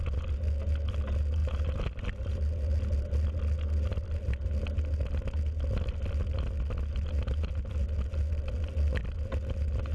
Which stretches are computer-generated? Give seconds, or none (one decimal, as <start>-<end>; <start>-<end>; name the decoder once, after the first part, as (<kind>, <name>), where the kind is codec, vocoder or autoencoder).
none